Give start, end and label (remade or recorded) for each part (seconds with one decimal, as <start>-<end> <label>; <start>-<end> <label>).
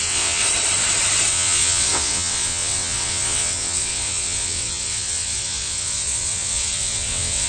0.0-0.4 remade; 0.4-1.3 recorded; 1.3-7.5 remade